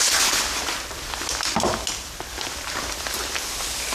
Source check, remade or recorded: recorded